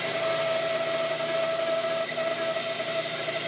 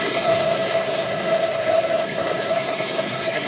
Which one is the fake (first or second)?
second